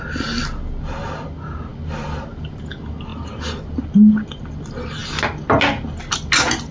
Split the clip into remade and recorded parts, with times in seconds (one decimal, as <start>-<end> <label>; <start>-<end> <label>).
0.0-1.7 recorded; 1.7-2.6 remade; 2.6-3.1 recorded; 3.1-4.4 remade; 4.4-6.7 recorded